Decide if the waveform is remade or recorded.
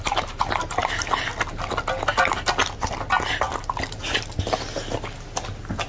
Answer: recorded